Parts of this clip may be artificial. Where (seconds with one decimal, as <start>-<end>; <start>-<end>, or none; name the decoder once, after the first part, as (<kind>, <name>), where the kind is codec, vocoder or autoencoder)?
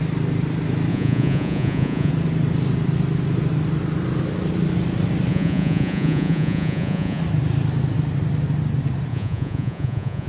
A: 0.9-2.1 (vocoder, Vocos); 5.3-7.2; 9.1-10.3